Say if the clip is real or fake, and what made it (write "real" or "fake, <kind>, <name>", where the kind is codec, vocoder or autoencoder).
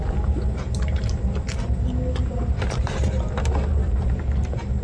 real